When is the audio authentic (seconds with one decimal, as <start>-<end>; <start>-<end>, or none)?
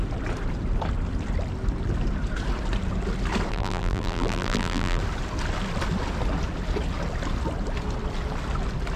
0.0-3.5; 5.0-9.0